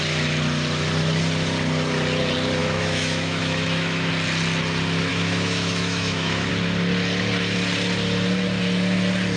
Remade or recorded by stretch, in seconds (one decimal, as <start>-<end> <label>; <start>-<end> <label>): 0.0-2.6 recorded; 2.6-4.1 remade; 4.1-5.1 recorded; 5.1-6.5 remade; 6.5-9.4 recorded